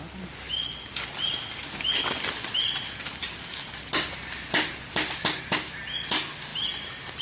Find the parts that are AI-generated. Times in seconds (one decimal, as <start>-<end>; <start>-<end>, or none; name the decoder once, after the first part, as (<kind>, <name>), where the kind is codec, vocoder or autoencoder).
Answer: none